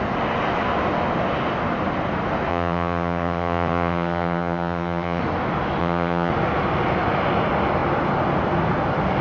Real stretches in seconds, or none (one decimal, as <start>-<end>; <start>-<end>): 0.0-2.5; 5.2-5.8; 6.3-9.2